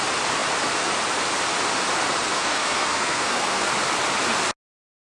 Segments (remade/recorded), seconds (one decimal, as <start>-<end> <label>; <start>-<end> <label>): 0.0-2.3 recorded; 2.3-3.7 remade; 3.7-5.0 recorded